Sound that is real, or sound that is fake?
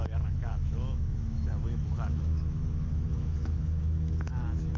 fake